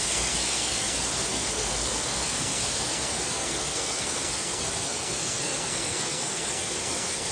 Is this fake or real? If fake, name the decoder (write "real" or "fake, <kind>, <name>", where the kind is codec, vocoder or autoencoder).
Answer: fake, codec, SNAC